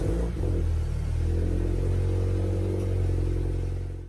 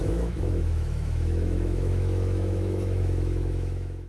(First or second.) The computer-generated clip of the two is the second